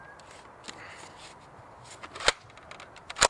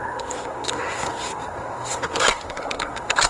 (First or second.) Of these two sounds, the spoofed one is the second